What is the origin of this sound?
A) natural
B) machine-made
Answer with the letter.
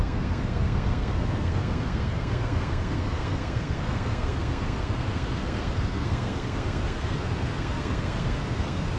B